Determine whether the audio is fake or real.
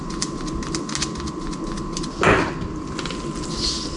real